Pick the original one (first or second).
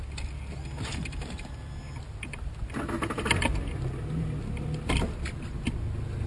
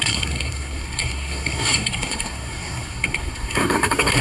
first